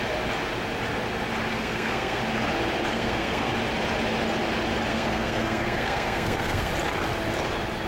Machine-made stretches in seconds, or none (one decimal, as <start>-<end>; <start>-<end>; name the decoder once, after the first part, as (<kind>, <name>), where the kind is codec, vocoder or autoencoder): 1.5-2.2 (codec, SNAC); 2.9-3.5; 4.9-6.7